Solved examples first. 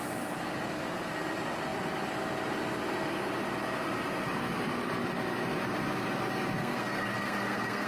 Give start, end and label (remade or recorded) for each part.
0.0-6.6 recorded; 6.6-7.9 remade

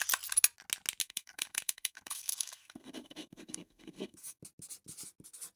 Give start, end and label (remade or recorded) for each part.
0.0-1.0 recorded; 1.0-4.4 remade; 4.4-5.6 recorded